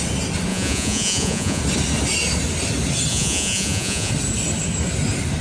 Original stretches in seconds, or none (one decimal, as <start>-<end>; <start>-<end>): 0.0-0.5; 1.6-3.1; 4.1-5.4